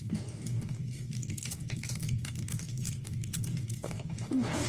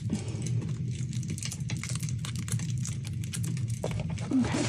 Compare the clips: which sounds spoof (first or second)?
first